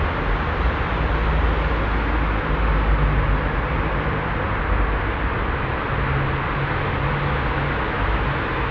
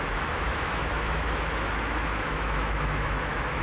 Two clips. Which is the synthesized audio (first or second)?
second